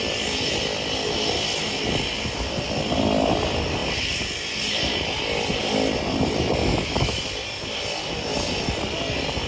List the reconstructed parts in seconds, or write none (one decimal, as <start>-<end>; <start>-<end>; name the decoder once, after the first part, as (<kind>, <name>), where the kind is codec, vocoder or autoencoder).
6.6-7.2 (autoencoder, DAC-VAE)

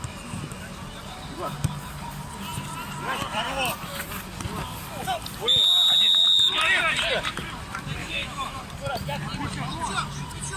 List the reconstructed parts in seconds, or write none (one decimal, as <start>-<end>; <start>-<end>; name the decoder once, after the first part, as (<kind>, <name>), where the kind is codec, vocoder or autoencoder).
8.0-8.6 (autoencoder, DAC-VAE)

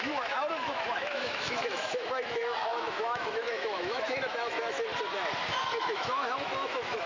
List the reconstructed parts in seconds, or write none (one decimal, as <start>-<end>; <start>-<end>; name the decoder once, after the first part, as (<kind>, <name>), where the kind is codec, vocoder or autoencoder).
0.0-4.9 (autoencoder, DAC-VAE); 5.5-7.1

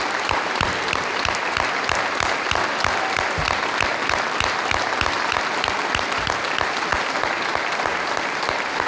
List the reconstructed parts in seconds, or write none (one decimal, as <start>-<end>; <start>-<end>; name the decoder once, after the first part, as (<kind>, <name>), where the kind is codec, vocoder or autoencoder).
none

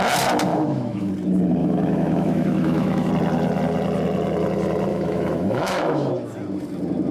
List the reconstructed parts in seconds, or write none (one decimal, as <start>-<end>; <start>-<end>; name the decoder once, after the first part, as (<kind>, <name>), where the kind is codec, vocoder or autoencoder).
0.5-1.1 (autoencoder, DAC-VAE); 1.6-3.1; 4.9-6.1

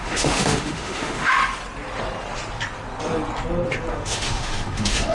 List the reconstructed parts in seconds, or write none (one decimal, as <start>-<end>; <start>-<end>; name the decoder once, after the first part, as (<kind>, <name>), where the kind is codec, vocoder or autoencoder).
0.0-1.4 (autoencoder, DAC-VAE); 3.9-5.1